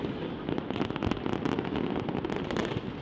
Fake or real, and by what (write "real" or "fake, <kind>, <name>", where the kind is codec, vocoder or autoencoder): real